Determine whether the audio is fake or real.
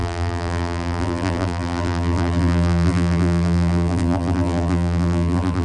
fake